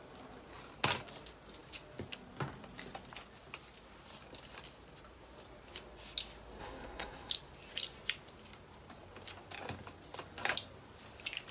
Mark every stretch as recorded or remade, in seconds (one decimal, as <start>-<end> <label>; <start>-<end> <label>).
0.0-6.6 recorded; 6.6-7.3 remade; 7.3-11.5 recorded